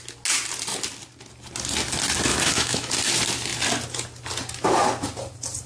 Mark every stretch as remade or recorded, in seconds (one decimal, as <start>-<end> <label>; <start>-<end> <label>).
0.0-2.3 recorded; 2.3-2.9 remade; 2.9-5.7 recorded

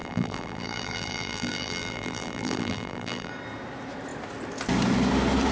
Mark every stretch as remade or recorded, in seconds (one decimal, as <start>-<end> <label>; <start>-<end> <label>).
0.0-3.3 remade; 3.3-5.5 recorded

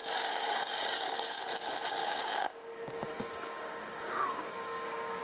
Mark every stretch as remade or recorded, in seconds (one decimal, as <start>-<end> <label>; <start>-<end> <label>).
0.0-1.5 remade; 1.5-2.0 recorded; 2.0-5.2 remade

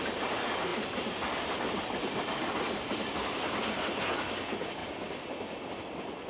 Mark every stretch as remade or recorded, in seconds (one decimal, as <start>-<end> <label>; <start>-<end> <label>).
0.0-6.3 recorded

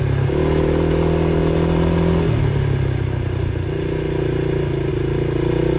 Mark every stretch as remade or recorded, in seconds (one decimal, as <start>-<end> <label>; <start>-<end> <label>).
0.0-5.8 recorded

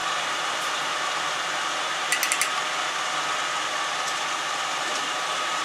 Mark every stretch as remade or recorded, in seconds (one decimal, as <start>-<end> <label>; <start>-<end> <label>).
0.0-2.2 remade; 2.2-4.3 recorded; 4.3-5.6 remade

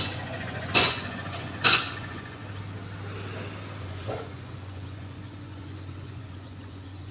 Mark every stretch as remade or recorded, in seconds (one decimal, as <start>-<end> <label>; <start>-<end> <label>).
0.0-2.4 remade; 2.4-3.8 recorded; 3.8-7.1 remade